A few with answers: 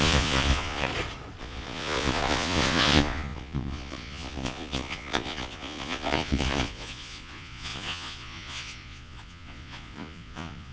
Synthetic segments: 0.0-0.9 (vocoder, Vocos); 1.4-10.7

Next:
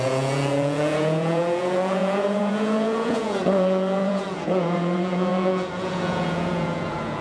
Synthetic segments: 0.0-7.2 (vocoder, Vocos)

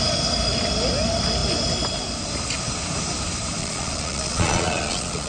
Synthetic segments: 3.6-5.3 (vocoder, Vocos)

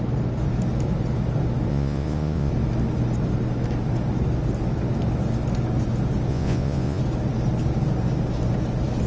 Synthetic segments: 1.7-2.5 (vocoder, Vocos); 6.3-7.0

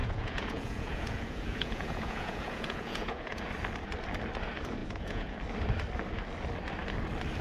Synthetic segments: 0.0-3.5 (vocoder, Vocos); 4.8-5.4

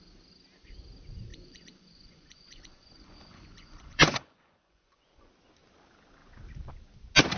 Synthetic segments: 1.3-5.3 (vocoder, Vocos)